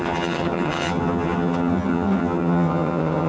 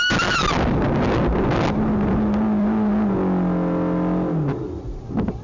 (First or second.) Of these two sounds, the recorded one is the second